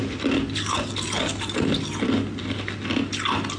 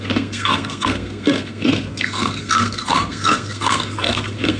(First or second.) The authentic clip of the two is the first